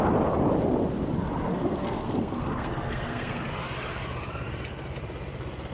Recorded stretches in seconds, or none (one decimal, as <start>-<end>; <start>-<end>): 0.0-1.5; 3.4-5.7